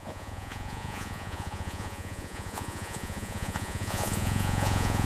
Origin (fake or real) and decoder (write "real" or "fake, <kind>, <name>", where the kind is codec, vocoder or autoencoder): fake, vocoder, Vocos